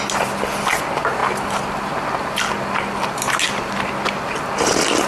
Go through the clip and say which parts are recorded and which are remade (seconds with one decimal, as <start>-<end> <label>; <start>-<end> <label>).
0.0-5.1 recorded